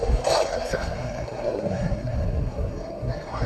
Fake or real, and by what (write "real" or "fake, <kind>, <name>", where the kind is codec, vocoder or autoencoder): fake, codec, SNAC